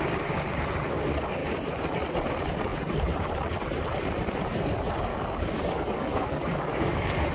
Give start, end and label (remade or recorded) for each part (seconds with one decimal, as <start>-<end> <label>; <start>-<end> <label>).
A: 0.0-5.1 recorded; 5.1-7.3 remade